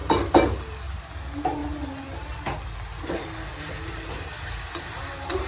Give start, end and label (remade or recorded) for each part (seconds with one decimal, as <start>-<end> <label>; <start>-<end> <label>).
0.0-5.5 recorded